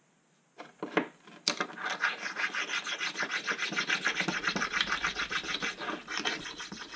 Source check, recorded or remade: recorded